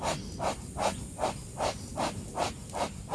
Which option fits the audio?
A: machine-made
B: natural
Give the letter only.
B